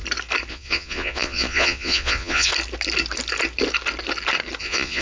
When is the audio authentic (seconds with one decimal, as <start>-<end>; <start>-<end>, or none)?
0.0-0.5; 2.5-4.6

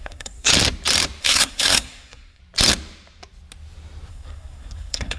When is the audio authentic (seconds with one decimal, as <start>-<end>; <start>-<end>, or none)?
0.5-1.2; 2.4-4.1

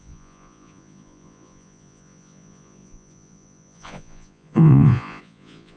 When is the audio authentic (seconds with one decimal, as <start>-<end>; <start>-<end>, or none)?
none

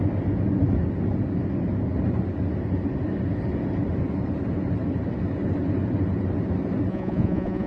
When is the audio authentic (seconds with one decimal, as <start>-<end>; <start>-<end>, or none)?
0.0-6.9

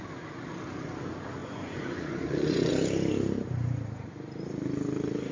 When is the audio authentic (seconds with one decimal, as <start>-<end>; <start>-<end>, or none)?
0.0-1.4; 2.7-5.3

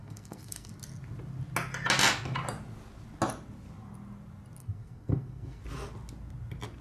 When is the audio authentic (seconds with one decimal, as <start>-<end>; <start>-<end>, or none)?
0.7-4.6; 5.6-6.8